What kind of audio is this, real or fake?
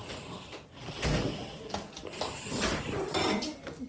real